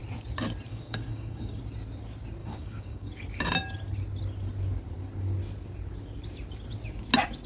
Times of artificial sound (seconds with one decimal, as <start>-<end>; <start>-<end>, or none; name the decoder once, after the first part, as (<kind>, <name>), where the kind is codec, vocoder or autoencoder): 0.7-1.6 (codec, DAC); 2.4-3.1

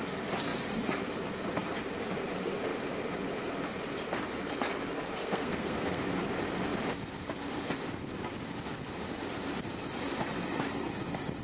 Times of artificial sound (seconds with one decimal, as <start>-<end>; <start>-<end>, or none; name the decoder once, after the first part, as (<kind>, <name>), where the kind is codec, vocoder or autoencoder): 5.2-6.0 (codec, SNAC)

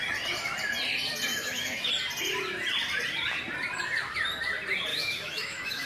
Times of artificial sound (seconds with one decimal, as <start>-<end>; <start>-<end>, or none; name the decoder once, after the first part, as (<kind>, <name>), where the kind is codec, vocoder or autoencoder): 1.3-1.9 (autoencoder, DAC-VAE); 4.9-5.9

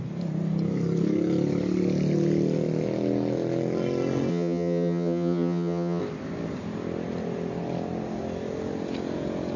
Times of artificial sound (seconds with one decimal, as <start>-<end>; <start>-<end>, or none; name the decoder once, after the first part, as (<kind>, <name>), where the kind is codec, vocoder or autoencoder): 4.3-6.0 (vocoder, HiFi-GAN)